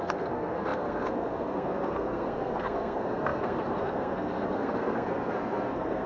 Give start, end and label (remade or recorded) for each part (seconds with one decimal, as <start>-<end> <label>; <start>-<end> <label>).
0.0-6.1 remade